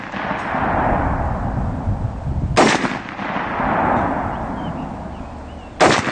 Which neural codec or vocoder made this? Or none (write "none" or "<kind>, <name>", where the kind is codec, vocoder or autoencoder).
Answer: none